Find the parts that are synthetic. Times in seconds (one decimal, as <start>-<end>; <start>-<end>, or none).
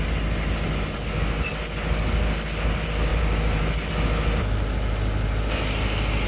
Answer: 3.1-3.9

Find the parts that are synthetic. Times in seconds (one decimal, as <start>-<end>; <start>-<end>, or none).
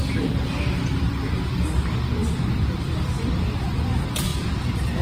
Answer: 2.2-3.3